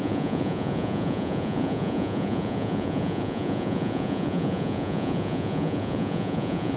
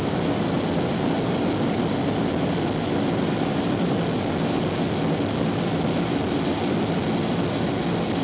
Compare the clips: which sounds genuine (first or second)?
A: second